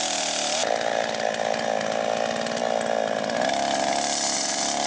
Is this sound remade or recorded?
recorded